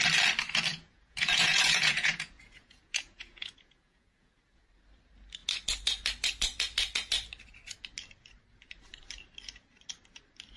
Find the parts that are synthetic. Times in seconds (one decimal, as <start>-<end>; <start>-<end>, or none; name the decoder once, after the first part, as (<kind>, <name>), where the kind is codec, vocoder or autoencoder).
0.7-4.6 (vocoder, Vocos)